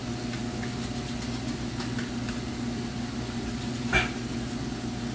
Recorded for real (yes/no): yes